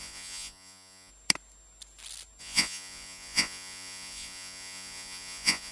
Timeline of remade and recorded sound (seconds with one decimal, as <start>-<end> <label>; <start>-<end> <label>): 0.0-1.1 remade; 1.1-2.4 recorded; 2.4-5.7 remade